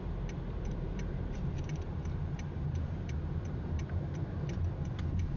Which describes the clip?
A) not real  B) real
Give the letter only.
A